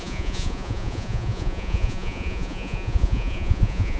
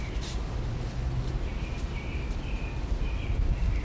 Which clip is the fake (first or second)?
first